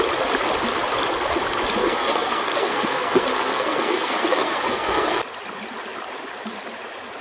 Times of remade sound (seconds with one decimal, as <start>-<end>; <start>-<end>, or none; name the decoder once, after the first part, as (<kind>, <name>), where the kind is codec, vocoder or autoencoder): 1.8-5.2 (codec, SNAC)